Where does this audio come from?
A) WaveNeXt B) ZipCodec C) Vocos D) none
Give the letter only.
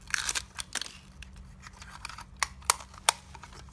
D